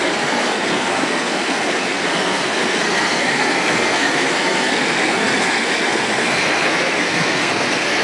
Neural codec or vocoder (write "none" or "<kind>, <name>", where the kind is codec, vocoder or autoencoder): codec, SNAC